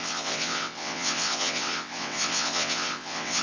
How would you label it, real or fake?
fake